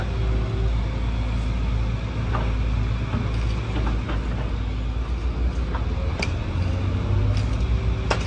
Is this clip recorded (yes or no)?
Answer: yes